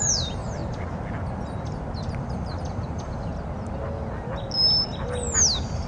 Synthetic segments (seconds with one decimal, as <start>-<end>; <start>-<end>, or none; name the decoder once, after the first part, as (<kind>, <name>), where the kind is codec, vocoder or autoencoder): 0.0-0.6 (vocoder, BigVGAN v2); 2.2-3.3